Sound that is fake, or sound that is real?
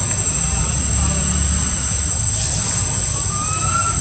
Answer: real